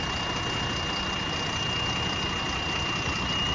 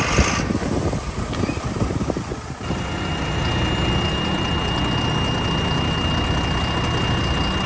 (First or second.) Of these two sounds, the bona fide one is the second